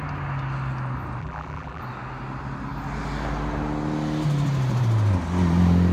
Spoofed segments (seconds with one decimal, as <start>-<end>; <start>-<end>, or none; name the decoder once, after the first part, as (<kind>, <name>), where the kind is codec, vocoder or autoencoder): 1.2-1.8 (vocoder, BigVGAN v2)